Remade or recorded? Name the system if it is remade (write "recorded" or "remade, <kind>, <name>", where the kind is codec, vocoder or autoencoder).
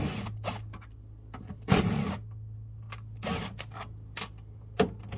recorded